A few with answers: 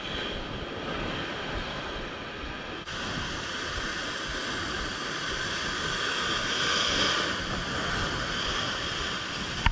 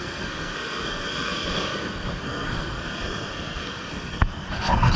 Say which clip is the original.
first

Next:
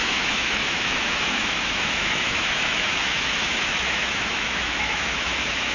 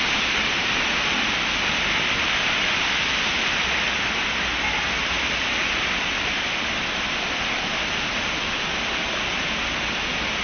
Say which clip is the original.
second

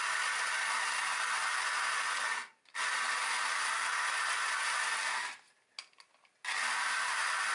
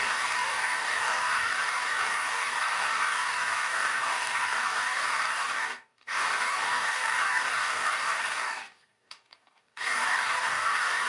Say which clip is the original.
first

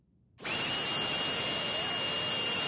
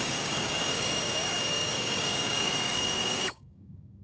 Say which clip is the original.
first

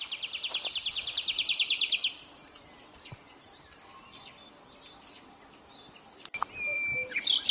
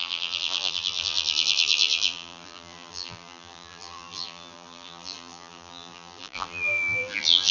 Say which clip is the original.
first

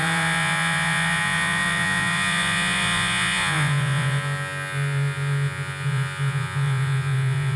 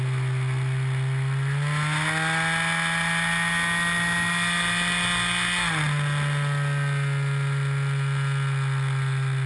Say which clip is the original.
second